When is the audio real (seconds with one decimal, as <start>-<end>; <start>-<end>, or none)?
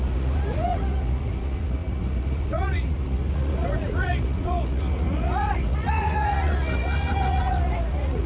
none